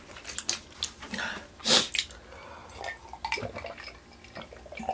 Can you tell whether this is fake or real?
real